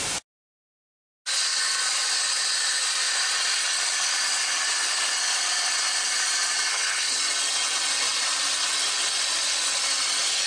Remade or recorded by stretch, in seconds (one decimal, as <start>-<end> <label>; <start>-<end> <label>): 0.0-6.7 recorded; 6.7-7.2 remade; 7.2-10.5 recorded